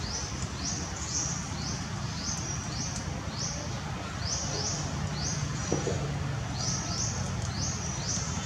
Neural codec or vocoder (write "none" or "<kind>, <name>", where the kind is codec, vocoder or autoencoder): none